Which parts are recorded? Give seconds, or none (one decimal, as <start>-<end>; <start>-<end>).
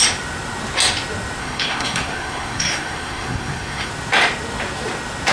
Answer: 0.0-1.4; 3.9-5.3